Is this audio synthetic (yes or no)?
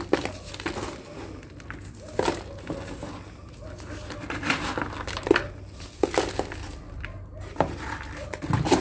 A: no